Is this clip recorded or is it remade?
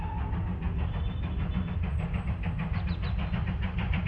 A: recorded